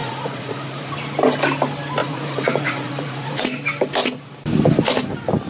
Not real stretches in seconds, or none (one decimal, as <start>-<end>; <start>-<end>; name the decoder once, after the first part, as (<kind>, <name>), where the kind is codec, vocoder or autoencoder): 0.0-0.9 (vocoder, Vocos); 2.0-3.4